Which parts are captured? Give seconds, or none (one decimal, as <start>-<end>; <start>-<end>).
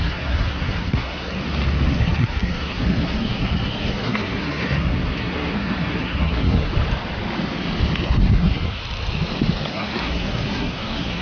1.4-1.9; 6.7-8.2; 8.8-9.7